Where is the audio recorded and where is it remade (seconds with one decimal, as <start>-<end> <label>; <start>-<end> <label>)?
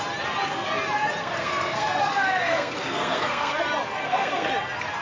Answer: 0.0-1.2 recorded; 1.2-3.6 remade; 3.6-4.0 recorded; 4.0-4.5 remade; 4.5-5.0 recorded